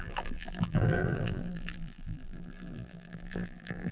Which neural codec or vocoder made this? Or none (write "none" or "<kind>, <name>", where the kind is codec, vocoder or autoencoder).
vocoder, BigVGAN v2